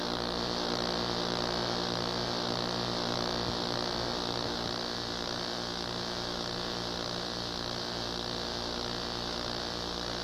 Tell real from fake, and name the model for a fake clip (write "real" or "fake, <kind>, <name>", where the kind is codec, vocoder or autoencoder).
real